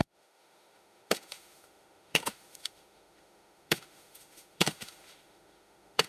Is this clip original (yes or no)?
no